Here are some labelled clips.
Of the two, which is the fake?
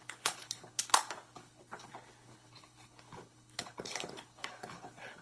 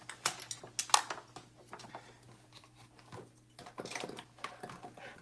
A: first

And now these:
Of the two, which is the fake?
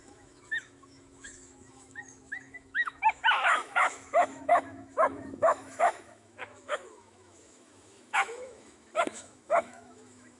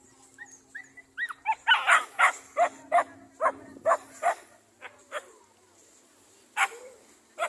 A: first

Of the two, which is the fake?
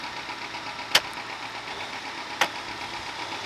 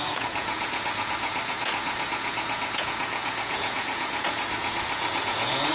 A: second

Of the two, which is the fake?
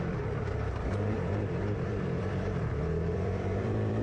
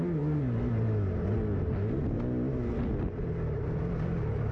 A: first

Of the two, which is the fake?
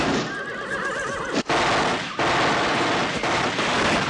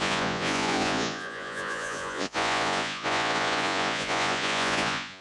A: second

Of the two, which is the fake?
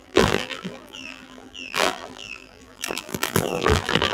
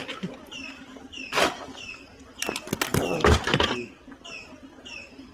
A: first